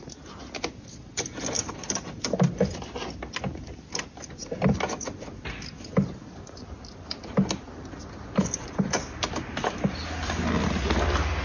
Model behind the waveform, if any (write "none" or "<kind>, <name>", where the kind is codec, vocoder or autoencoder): none